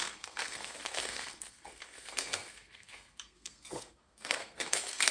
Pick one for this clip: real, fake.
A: fake